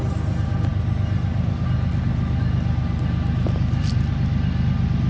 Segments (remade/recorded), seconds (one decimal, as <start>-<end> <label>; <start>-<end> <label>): 0.0-5.1 recorded